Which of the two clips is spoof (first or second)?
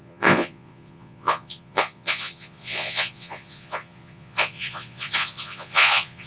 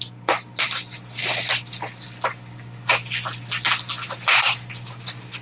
first